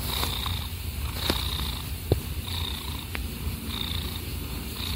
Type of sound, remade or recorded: recorded